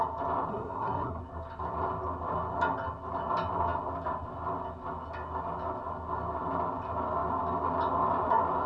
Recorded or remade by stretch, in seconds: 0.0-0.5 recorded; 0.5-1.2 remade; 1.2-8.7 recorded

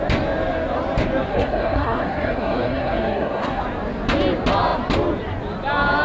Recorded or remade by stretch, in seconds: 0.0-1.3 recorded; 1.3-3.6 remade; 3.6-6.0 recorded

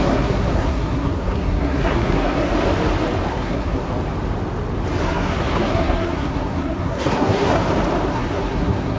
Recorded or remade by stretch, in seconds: 0.0-2.5 remade; 2.5-3.3 recorded; 3.3-3.9 remade; 3.9-5.0 recorded; 5.0-7.6 remade; 7.6-8.1 recorded; 8.1-9.0 remade

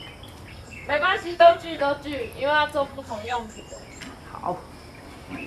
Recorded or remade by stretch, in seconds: 0.0-0.5 recorded; 0.5-1.8 remade; 1.8-2.9 recorded; 2.9-3.6 remade; 3.6-5.5 recorded

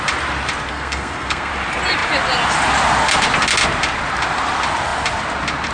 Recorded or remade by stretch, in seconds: 0.0-0.7 recorded; 0.7-1.5 remade; 1.5-5.7 recorded

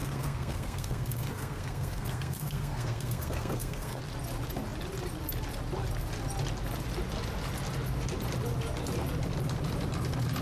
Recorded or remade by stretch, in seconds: 0.0-4.0 remade; 4.0-10.4 recorded

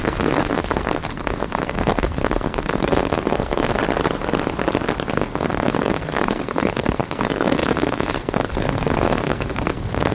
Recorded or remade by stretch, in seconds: 0.0-3.8 remade; 3.8-5.1 recorded; 5.1-10.1 remade

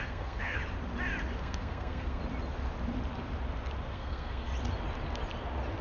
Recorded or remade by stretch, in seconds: 0.0-0.6 remade; 0.6-1.4 recorded; 1.4-2.2 remade; 2.2-3.9 recorded; 3.9-4.5 remade; 4.5-5.8 recorded